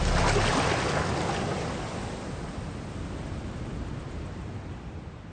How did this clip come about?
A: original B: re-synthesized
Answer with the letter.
A